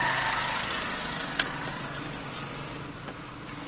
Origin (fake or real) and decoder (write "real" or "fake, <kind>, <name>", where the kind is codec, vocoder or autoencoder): real